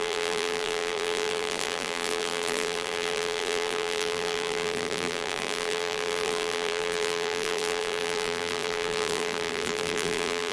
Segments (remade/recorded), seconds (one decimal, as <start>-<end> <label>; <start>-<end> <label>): 0.0-10.5 remade